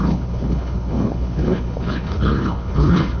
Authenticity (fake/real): fake